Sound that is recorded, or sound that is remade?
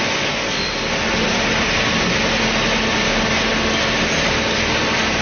recorded